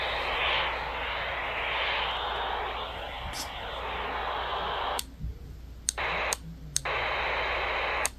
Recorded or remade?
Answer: recorded